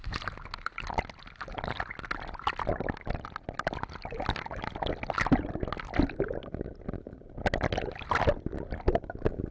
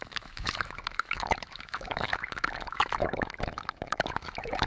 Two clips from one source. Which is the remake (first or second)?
second